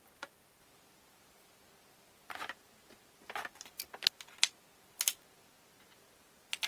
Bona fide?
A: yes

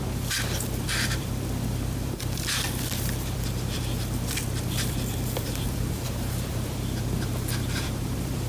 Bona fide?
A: no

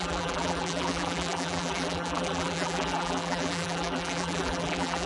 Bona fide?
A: no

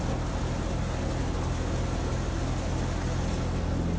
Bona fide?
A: yes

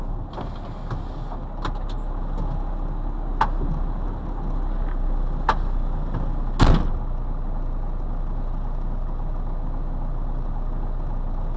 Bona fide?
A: yes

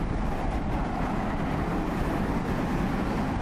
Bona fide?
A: yes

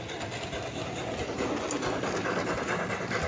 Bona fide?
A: yes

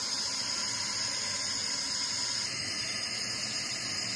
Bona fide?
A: yes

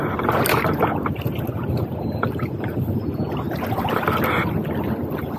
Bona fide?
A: yes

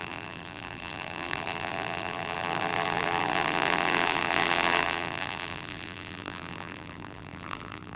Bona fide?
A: no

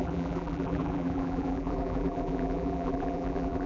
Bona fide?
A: no